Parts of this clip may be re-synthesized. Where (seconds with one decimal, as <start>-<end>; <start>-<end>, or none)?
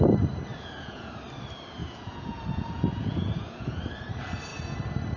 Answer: 0.5-1.1; 1.8-3.8